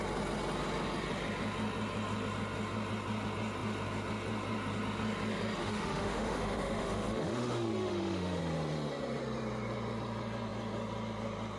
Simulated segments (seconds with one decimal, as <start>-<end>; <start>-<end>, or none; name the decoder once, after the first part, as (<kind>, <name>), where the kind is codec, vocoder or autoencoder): 5.6-8.4 (autoencoder, DAC-VAE)